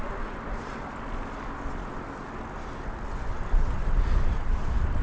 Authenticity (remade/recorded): recorded